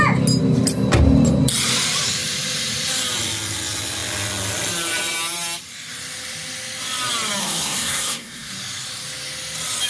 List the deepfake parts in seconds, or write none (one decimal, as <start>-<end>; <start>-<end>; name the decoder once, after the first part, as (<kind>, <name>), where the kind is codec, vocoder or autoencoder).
7.4-8.5 (codec, SNAC)